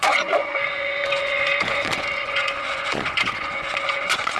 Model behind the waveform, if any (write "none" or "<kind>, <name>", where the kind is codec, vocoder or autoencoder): vocoder, Vocos